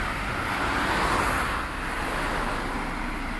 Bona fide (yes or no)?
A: yes